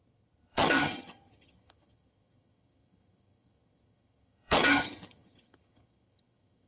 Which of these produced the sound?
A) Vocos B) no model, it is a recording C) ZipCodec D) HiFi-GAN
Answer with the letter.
D